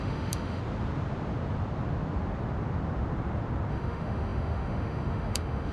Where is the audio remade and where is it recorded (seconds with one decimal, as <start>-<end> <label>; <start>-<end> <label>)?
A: 0.0-0.6 remade; 0.6-3.7 recorded; 3.7-5.7 remade